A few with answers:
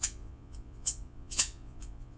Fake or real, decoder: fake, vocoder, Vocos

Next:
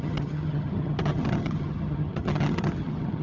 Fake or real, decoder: fake, vocoder, HiFi-GAN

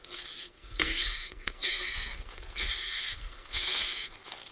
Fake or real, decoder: fake, codec, SNAC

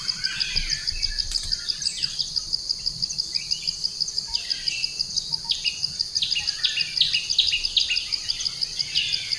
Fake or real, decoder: real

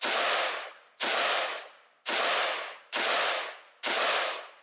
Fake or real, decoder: real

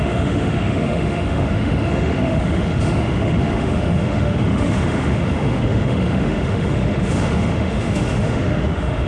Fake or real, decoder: fake, autoencoder, DAC-VAE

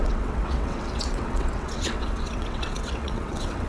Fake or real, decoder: fake, vocoder, WaveNeXt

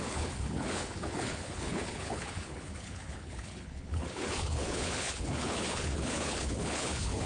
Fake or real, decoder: fake, codec, HILCodec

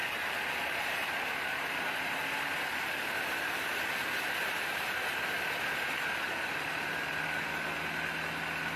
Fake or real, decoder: real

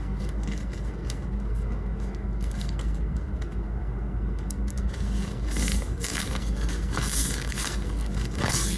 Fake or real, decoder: fake, codec, SNAC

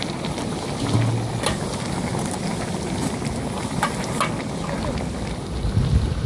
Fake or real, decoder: real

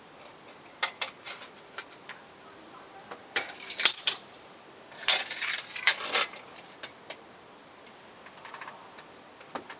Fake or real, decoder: fake, vocoder, BigVGAN v2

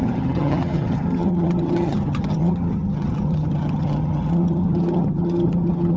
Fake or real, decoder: fake, vocoder, HiFi-GAN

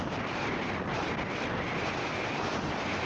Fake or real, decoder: real